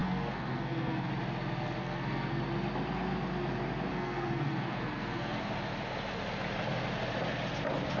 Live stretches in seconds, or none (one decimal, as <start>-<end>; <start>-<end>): 1.1-1.8; 2.4-3.9; 5.4-8.0